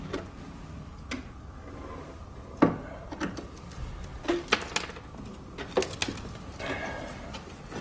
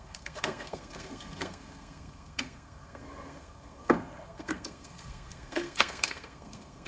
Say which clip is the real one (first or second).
first